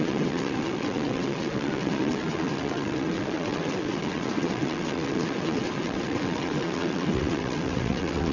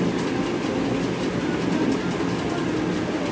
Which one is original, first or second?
second